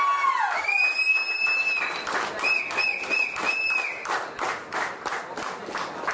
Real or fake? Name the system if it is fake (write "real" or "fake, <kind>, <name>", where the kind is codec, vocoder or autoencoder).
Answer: real